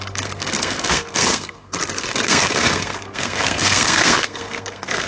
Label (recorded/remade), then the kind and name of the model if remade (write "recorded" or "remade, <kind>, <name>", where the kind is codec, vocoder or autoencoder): remade, codec, SNAC